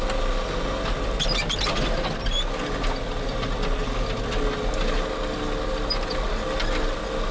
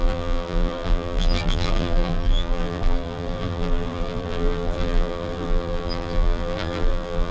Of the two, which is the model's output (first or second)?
second